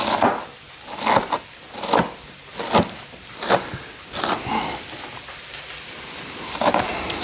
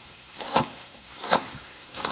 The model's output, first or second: second